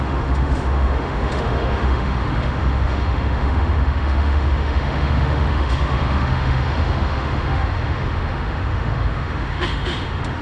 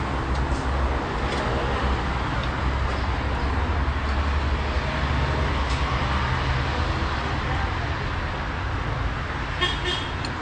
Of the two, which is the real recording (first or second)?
second